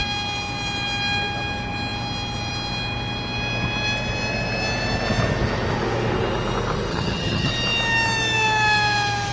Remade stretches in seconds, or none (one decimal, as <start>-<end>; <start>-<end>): 6.9-7.5